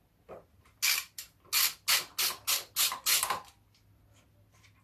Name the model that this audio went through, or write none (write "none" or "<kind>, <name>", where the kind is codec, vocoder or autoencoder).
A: none